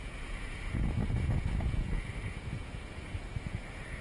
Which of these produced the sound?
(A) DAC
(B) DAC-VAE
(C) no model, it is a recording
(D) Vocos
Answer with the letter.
D